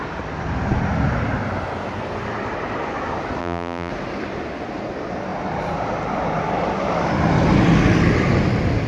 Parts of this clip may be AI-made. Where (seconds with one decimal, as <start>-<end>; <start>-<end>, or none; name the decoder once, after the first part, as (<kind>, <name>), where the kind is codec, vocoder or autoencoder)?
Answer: 3.4-3.9 (vocoder, BigVGAN v2)